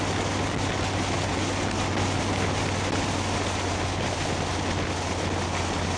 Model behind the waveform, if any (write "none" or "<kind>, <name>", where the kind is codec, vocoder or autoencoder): none